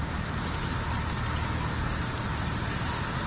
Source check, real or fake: real